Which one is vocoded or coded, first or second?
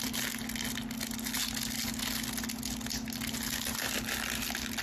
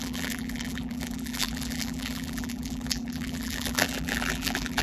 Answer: second